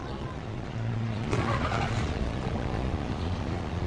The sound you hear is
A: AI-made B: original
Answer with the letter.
A